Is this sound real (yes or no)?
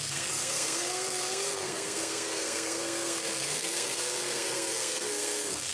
no